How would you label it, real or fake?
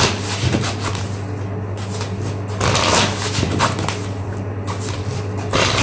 real